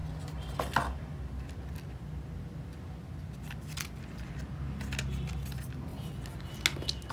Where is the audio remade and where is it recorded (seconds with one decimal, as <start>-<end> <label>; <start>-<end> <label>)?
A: 0.0-7.1 recorded

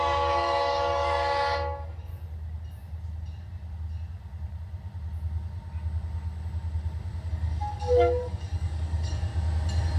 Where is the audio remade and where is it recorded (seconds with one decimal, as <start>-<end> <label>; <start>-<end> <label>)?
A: 0.0-2.1 remade; 2.1-7.3 recorded; 7.3-9.3 remade; 9.3-10.0 recorded

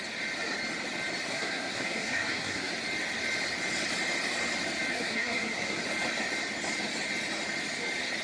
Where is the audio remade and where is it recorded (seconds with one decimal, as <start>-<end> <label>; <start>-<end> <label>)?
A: 0.0-1.3 recorded; 1.3-2.7 remade; 2.7-4.9 recorded; 4.9-5.8 remade; 5.8-8.2 recorded

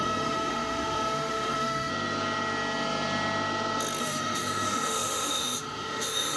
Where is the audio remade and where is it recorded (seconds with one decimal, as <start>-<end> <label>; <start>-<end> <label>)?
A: 0.0-1.9 remade; 1.9-4.0 recorded; 4.0-6.4 remade

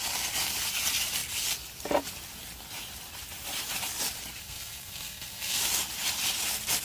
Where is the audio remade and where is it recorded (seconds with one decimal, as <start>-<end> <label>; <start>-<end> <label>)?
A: 0.0-4.4 recorded; 4.4-5.6 remade; 5.6-6.8 recorded

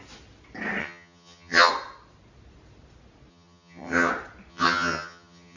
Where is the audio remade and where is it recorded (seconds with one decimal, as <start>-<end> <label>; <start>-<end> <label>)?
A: 0.0-0.8 recorded; 0.8-1.7 remade; 1.7-3.3 recorded; 3.3-4.1 remade; 4.1-4.5 recorded; 4.5-5.6 remade

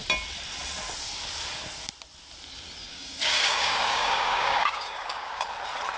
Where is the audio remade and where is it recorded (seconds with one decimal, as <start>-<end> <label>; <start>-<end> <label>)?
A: 0.0-2.9 recorded; 2.9-5.4 remade; 5.4-6.0 recorded

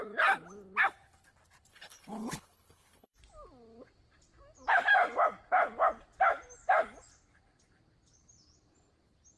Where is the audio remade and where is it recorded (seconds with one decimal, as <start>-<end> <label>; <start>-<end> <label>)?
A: 0.0-1.7 recorded; 1.7-3.2 remade; 3.2-9.4 recorded